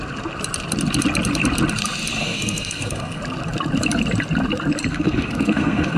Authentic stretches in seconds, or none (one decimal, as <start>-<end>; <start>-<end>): 0.0-2.2; 3.2-4.9